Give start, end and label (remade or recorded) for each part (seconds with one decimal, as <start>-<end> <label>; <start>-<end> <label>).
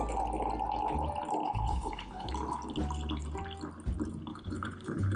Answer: 0.0-1.4 recorded; 1.4-2.3 remade; 2.3-4.3 recorded; 4.3-5.2 remade